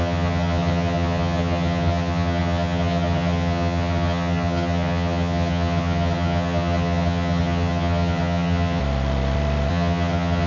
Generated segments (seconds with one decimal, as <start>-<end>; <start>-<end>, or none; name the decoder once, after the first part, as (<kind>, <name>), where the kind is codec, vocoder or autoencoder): 0.0-8.8 (vocoder, HiFi-GAN); 9.7-10.5